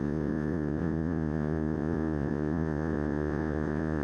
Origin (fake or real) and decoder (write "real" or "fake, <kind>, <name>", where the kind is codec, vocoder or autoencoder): fake, vocoder, Vocos